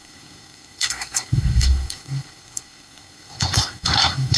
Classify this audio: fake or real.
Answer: fake